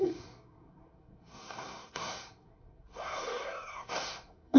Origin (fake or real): fake